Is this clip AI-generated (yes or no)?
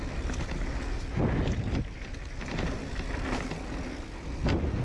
no